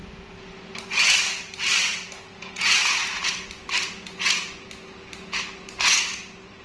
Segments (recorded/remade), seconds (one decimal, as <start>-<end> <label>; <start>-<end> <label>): 0.0-2.4 recorded; 2.4-3.2 remade; 3.2-6.6 recorded